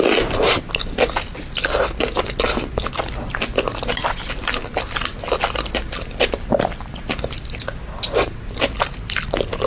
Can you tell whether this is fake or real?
real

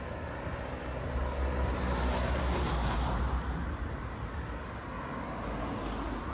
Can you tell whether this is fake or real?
real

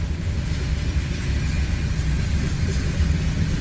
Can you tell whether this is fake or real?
real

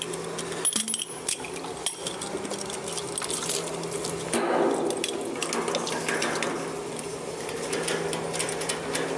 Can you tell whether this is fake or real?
real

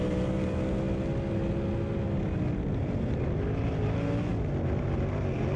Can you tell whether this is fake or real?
real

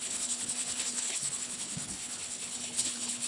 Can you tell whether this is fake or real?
fake